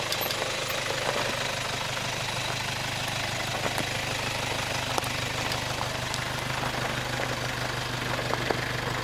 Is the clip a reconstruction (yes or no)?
no